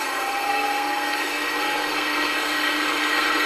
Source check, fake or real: fake